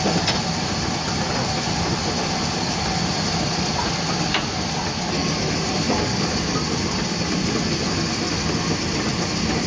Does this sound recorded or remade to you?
recorded